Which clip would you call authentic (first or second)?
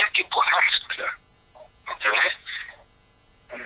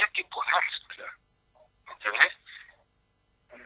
second